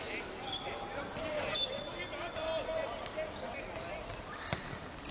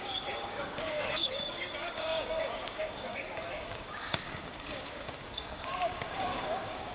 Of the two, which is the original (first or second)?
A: first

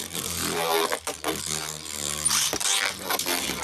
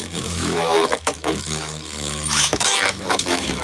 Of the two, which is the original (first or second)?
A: first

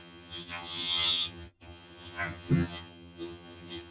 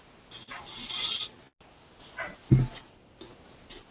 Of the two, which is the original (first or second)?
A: second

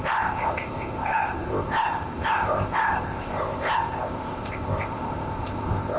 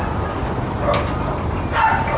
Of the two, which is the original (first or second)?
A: second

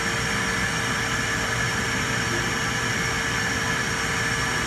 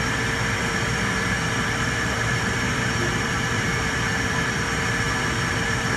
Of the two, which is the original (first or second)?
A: first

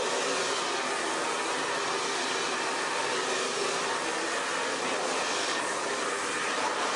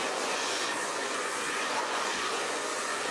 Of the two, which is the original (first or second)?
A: first